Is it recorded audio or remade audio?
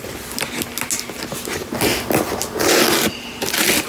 recorded